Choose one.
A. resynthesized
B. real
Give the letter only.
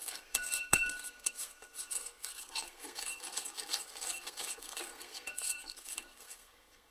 A